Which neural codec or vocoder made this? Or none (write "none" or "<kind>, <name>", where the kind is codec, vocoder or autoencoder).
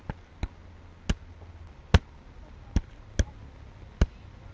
none